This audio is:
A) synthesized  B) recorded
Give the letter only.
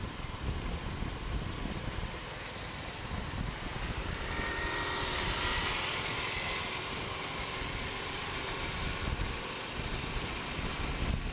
A